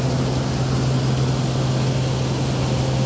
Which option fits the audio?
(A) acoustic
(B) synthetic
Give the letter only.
A